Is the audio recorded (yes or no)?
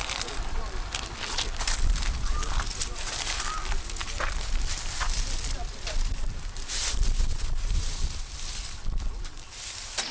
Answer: no